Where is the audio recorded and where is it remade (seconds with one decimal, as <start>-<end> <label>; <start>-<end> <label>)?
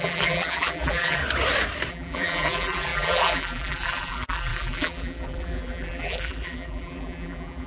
0.0-1.2 remade; 1.2-1.9 recorded; 1.9-7.7 remade